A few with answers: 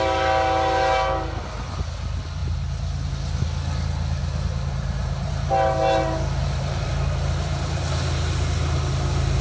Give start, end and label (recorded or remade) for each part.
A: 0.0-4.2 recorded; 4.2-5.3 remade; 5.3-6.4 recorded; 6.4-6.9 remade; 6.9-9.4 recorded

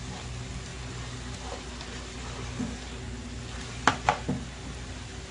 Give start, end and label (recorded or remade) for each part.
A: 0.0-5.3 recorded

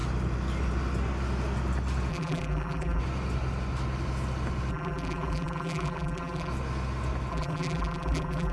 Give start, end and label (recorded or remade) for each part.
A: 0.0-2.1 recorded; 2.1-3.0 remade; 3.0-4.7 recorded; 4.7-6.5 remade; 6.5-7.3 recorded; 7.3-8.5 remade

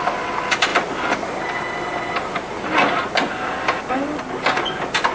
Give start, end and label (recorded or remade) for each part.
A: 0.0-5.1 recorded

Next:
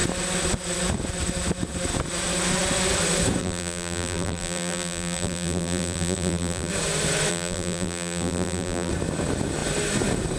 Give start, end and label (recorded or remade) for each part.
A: 0.0-3.4 recorded; 3.4-6.7 remade; 6.7-7.3 recorded; 7.3-8.9 remade; 8.9-10.4 recorded